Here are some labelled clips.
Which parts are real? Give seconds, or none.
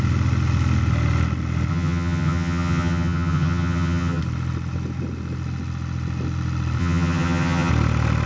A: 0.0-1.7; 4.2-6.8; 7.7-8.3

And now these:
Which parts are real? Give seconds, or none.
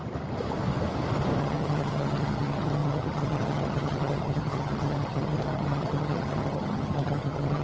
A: 0.0-1.4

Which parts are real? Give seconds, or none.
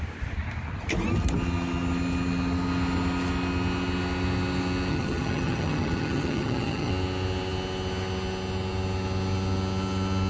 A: 0.0-4.9; 6.9-10.3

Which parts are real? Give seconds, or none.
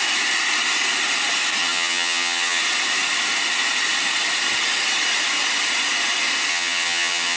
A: 0.0-1.6; 2.6-6.5